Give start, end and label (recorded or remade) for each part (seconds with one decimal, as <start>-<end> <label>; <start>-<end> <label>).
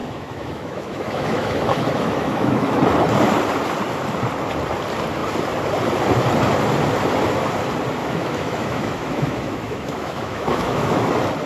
0.0-2.8 remade; 2.8-8.0 recorded; 8.0-11.0 remade; 11.0-11.5 recorded